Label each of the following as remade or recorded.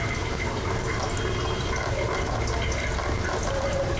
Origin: recorded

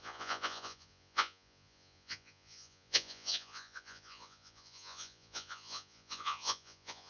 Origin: remade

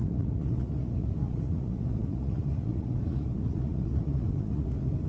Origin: remade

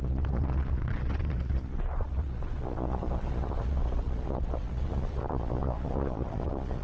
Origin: remade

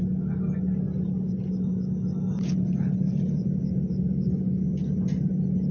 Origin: recorded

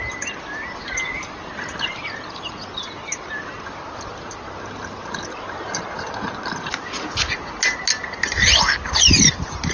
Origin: recorded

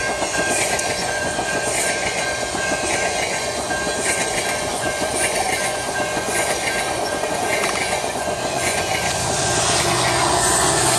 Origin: remade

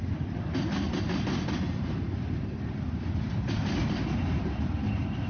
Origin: recorded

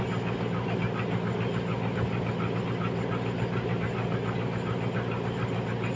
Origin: recorded